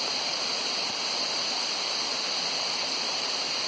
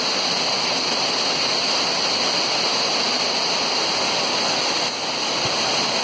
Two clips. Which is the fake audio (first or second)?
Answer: first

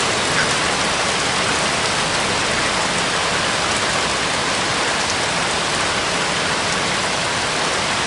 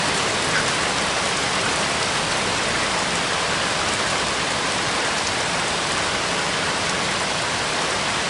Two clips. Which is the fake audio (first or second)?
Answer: second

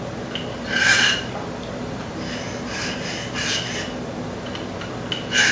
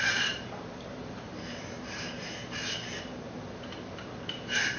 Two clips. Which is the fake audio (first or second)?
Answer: second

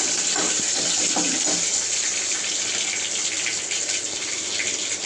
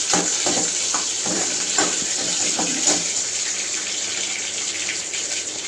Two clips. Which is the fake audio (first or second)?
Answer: second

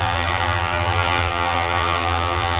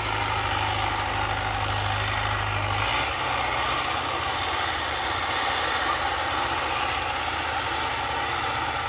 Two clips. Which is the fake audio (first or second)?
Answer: first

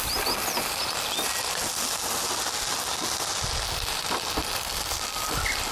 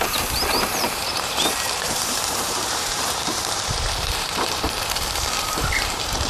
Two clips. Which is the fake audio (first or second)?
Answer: second